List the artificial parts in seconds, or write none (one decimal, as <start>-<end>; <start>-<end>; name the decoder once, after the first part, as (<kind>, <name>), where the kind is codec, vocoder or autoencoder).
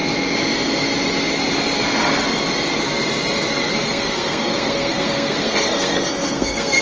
3.7-6.8 (codec, SNAC)